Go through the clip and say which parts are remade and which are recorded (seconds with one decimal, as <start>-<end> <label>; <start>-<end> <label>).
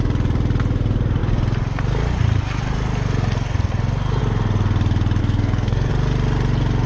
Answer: 0.0-5.2 recorded; 5.2-5.9 remade; 5.9-6.9 recorded